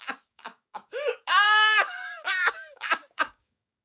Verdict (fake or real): fake